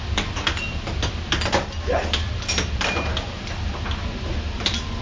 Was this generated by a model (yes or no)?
no